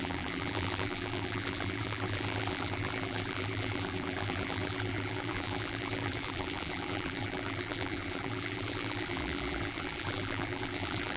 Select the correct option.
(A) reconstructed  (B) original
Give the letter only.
A